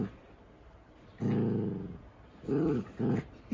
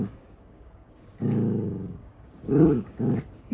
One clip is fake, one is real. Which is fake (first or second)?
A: second